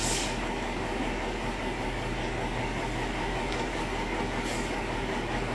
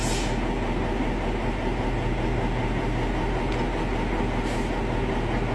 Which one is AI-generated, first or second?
first